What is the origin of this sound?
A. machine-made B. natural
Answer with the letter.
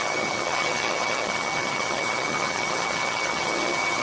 A